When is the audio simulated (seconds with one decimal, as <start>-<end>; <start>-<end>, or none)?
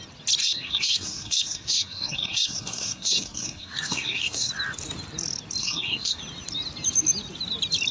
0.4-4.5; 5.6-6.2